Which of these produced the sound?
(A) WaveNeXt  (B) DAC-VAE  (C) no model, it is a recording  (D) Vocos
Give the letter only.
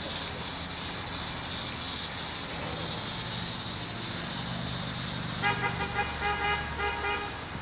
C